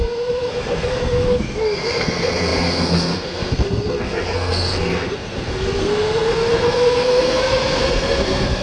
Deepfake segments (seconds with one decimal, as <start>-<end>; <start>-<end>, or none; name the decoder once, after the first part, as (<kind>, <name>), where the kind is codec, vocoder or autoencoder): 0.0-8.6 (codec, SNAC)